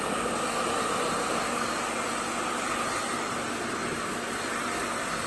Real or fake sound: real